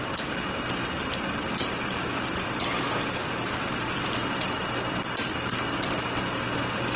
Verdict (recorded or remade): recorded